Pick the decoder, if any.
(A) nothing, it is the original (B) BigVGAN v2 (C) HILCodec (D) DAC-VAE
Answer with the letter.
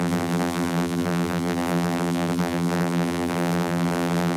B